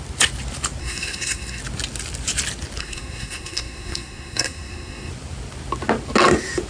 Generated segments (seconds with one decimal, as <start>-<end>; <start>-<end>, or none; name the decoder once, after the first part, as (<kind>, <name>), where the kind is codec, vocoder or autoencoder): 0.8-1.6 (codec, SNAC); 2.8-5.1